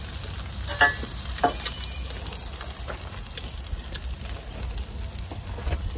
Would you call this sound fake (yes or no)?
no